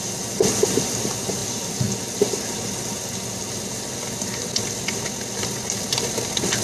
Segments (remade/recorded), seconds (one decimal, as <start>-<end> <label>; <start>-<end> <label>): 0.0-6.6 recorded